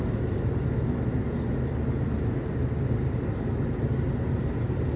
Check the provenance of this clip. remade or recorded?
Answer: recorded